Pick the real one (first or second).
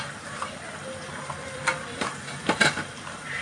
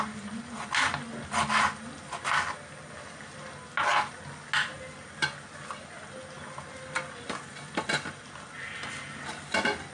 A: second